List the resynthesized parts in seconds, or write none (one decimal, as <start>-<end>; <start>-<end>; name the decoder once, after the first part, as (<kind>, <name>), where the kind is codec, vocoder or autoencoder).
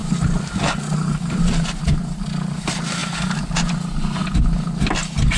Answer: none